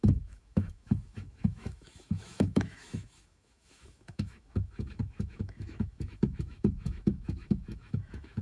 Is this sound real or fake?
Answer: fake